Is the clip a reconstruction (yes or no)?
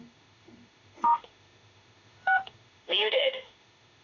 yes